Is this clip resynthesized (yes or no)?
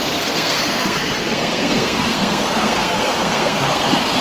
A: yes